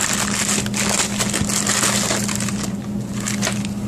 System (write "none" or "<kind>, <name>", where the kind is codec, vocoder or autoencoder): none